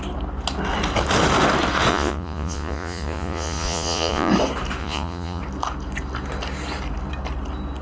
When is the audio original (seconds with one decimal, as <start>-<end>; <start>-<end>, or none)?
0.0-1.9; 4.3-4.8; 5.4-7.8